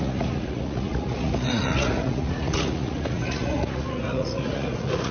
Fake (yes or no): yes